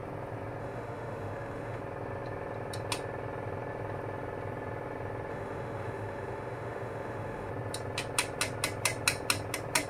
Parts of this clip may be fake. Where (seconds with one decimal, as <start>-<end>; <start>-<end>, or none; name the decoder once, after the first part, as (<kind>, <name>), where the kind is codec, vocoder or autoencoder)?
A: 0.6-1.8 (autoencoder, DAC-VAE); 5.3-7.5